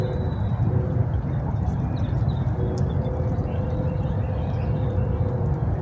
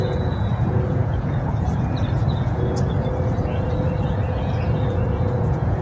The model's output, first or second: second